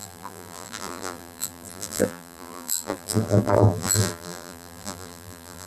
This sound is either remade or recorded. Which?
remade